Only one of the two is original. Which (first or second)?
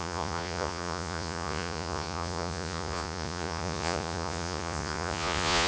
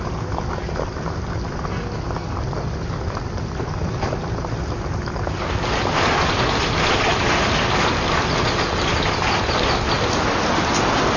second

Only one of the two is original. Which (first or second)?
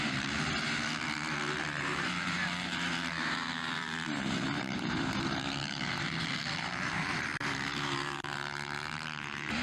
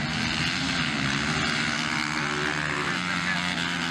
second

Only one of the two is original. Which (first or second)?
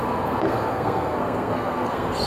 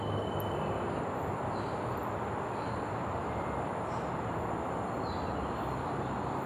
second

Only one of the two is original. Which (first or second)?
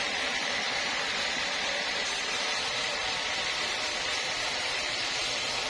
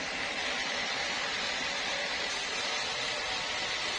second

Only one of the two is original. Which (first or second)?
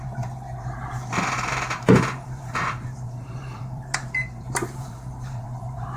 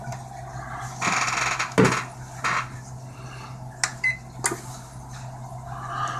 second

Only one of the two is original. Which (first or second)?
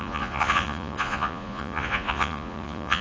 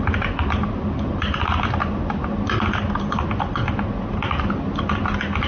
second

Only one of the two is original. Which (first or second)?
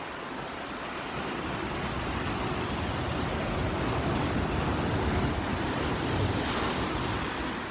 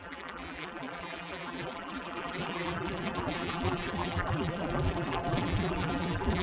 first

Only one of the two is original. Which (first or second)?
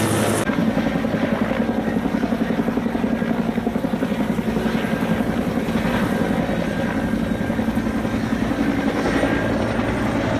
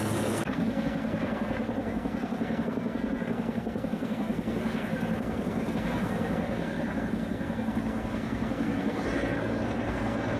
first